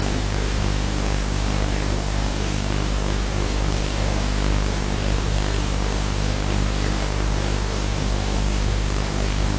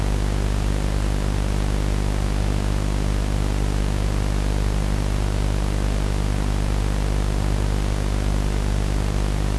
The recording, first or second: second